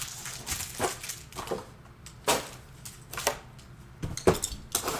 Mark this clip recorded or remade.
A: recorded